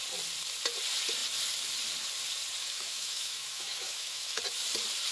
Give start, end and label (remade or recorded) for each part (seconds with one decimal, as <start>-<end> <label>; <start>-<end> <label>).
0.0-2.6 recorded; 2.6-4.4 remade; 4.4-5.1 recorded